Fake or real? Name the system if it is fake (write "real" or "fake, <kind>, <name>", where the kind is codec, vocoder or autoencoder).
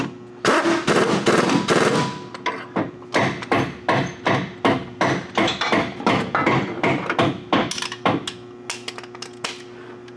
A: real